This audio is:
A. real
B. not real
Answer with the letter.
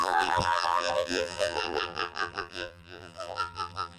B